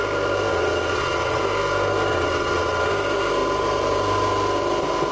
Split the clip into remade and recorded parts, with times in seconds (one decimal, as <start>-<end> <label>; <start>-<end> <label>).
0.0-0.5 recorded; 0.5-1.4 remade; 1.4-2.1 recorded; 2.1-2.9 remade; 2.9-5.1 recorded